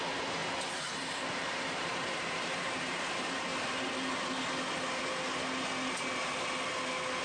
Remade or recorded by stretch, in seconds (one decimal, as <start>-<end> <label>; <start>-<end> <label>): 0.0-0.4 remade; 0.4-0.9 recorded; 0.9-3.5 remade; 3.5-7.2 recorded